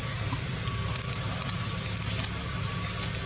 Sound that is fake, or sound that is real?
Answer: real